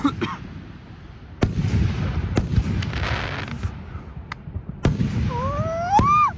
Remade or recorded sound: recorded